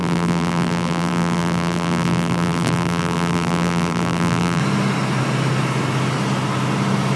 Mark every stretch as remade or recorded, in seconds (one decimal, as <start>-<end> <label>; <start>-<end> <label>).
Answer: 0.0-4.6 remade; 4.6-7.2 recorded